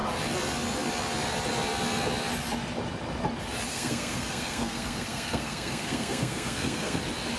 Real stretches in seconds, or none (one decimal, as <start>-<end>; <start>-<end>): 0.0-3.7; 7.0-7.4